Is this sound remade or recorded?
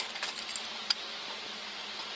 recorded